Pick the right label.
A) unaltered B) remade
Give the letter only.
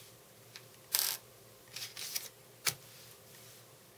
A